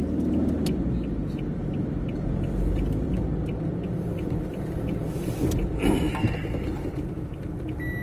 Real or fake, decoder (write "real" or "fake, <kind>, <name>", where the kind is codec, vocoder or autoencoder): real